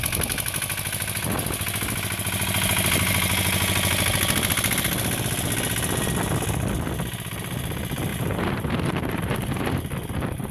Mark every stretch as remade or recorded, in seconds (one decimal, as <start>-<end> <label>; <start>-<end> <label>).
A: 0.0-8.1 recorded; 8.1-9.8 remade; 9.8-10.5 recorded